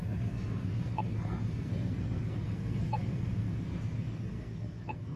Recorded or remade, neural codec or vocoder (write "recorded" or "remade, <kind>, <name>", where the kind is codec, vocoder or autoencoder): remade, codec, SNAC